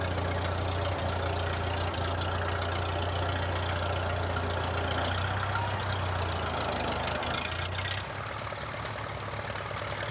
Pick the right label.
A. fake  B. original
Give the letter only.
B